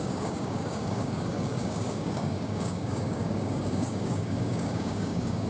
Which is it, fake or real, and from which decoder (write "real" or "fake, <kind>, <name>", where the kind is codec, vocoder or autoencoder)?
fake, codec, DAC